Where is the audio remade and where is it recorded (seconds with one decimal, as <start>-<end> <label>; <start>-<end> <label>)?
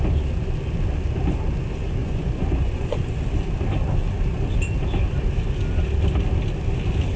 0.0-2.0 recorded; 2.0-3.2 remade; 3.2-7.2 recorded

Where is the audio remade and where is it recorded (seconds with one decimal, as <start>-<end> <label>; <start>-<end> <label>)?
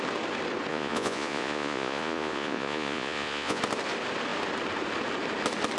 0.0-0.7 recorded; 0.7-3.6 remade; 3.6-5.8 recorded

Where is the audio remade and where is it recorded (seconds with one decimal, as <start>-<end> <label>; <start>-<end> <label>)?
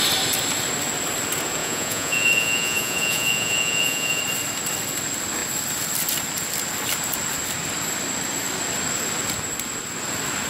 0.0-1.6 recorded; 1.6-4.2 remade; 4.2-10.5 recorded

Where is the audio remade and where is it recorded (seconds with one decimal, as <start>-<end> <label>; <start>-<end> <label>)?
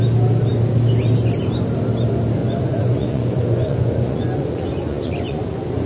0.0-2.4 recorded; 2.4-5.9 remade